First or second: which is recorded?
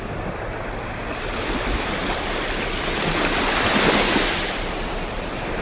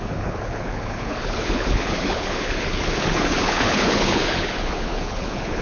first